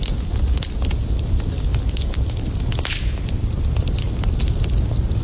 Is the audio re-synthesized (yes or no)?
no